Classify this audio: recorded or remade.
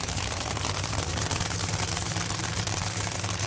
remade